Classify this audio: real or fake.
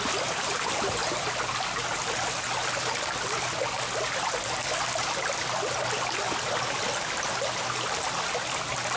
real